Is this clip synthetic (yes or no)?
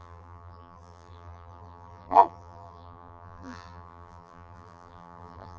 yes